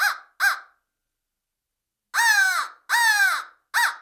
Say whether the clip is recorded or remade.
recorded